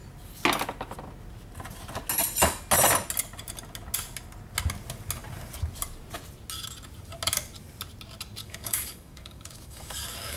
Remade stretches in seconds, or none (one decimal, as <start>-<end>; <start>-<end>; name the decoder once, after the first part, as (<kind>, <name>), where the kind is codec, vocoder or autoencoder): 8.4-10.4 (codec, DAC)

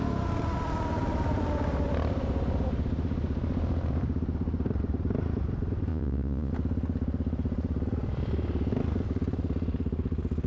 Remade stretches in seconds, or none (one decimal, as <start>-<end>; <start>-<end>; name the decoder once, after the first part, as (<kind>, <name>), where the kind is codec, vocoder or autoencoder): 5.9-6.5 (vocoder, Vocos)